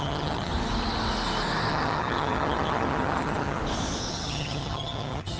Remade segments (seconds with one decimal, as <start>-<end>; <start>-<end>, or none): 0.0-0.5; 1.7-3.6; 4.1-5.4